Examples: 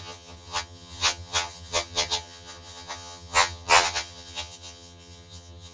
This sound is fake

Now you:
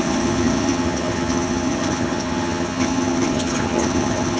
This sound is fake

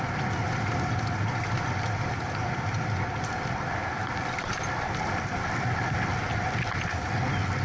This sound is real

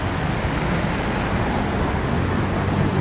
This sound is real